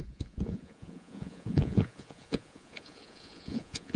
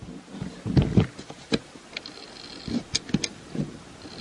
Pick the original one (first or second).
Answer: second